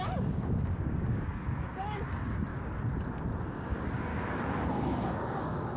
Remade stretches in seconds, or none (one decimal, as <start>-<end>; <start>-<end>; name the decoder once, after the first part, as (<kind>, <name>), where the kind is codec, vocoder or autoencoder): 0.0-2.5 (codec, DAC); 3.5-4.1; 4.7-5.8